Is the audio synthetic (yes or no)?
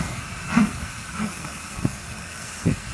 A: yes